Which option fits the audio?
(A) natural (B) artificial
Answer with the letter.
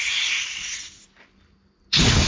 A